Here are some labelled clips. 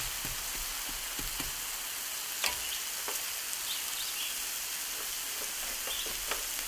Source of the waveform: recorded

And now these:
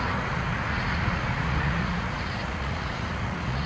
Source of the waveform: remade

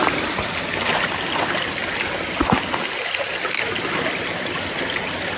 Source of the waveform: recorded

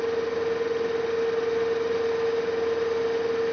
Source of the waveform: recorded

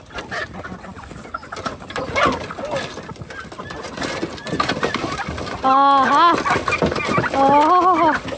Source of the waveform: recorded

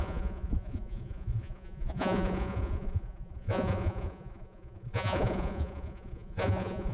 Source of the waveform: remade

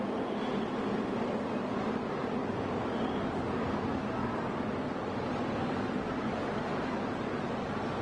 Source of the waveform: recorded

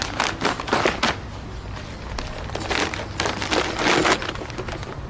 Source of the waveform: recorded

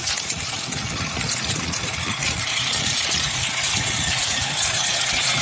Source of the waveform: remade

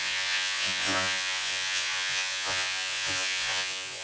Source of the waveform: remade